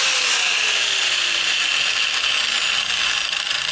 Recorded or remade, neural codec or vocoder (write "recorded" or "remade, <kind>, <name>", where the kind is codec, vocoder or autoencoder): recorded